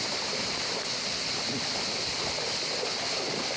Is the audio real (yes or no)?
yes